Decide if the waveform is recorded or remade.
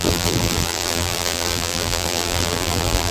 remade